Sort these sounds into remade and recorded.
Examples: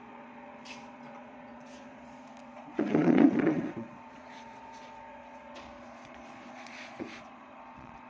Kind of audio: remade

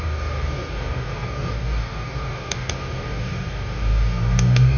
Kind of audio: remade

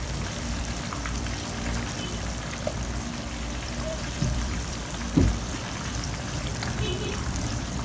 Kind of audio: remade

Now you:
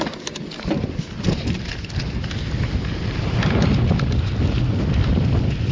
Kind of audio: recorded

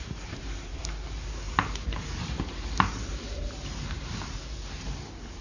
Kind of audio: remade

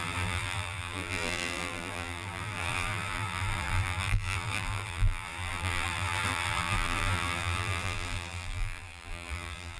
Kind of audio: remade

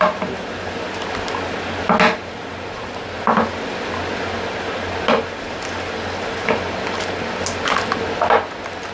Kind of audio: recorded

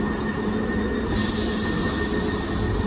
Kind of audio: recorded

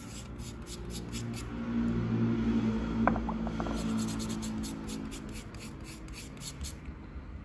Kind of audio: recorded